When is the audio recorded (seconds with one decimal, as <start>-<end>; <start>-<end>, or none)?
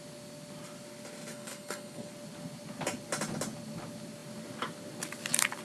0.0-1.3; 2.1-5.6